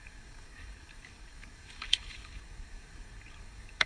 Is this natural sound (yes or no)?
no